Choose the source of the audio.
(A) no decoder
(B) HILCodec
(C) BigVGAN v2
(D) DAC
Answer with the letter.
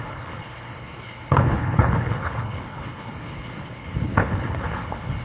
B